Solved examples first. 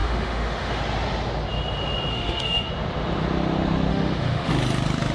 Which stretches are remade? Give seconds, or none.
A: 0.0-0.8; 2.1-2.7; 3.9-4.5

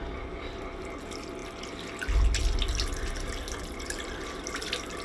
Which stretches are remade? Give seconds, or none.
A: none

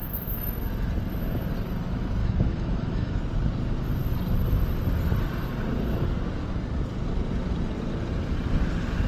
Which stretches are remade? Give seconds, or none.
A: 2.2-3.2

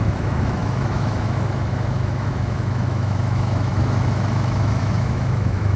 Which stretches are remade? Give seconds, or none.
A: 0.0-5.8

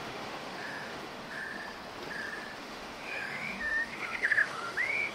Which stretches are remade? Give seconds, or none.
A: 0.0-1.4; 2.6-5.1

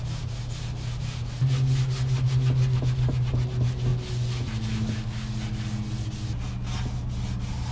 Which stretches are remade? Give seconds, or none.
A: none

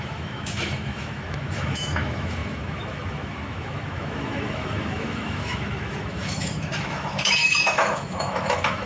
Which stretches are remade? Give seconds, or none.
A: 0.0-8.9